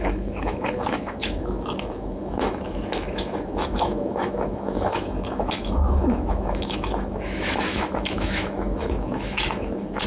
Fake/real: fake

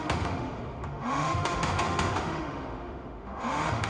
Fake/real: fake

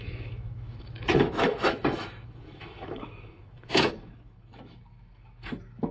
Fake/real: fake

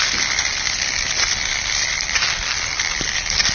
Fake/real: real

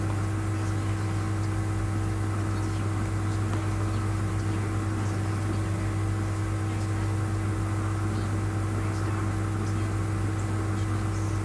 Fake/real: real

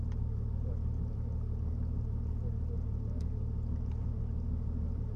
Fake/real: real